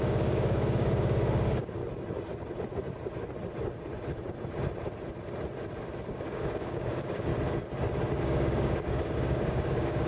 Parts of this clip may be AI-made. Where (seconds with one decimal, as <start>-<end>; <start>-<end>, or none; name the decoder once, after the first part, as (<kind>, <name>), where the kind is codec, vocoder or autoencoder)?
0.0-1.8 (codec, DAC); 6.1-7.3; 8.2-10.1